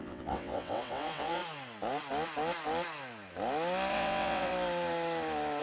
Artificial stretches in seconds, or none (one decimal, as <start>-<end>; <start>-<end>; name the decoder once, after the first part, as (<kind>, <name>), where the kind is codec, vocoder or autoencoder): 0.0-1.4 (vocoder, WaveNeXt); 3.9-4.5